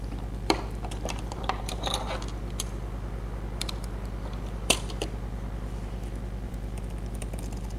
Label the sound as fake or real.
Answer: fake